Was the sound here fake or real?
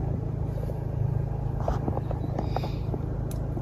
real